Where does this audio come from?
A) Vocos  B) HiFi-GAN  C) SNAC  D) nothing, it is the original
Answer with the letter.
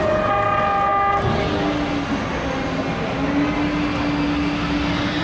D